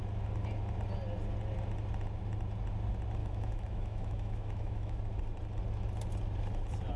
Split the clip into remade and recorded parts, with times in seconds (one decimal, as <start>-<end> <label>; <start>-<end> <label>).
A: 0.0-3.2 recorded; 3.2-5.0 remade; 5.0-7.0 recorded